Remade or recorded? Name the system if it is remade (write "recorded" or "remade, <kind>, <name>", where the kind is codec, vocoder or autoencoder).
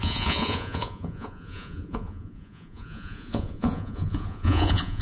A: remade, vocoder, Vocos